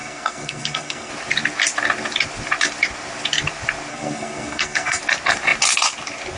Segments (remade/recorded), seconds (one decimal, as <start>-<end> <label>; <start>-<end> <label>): 0.0-1.1 remade; 1.1-3.9 recorded; 3.9-5.0 remade; 5.0-6.4 recorded